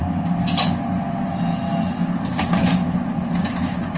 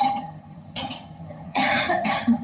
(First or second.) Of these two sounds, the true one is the first